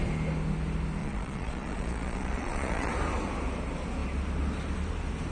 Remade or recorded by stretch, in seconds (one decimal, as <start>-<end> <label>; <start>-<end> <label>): 0.0-1.0 recorded; 1.0-2.9 remade; 2.9-5.3 recorded